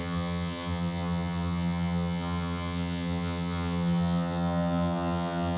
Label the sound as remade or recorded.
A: remade